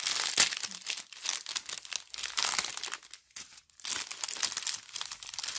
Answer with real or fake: real